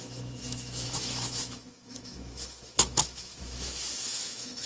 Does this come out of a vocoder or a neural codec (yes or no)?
yes